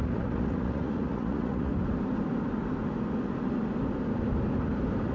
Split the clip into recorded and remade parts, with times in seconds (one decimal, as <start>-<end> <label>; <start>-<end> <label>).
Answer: 0.0-1.7 remade; 1.7-5.1 recorded